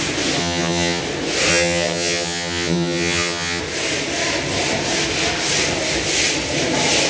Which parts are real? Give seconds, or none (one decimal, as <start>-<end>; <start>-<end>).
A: 0.0-0.4; 1.0-1.5; 3.6-7.1